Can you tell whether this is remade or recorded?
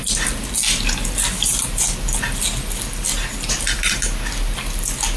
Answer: recorded